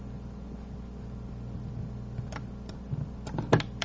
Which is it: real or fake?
real